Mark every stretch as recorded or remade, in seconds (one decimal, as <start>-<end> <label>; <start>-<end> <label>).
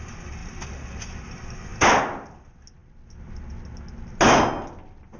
0.0-5.2 recorded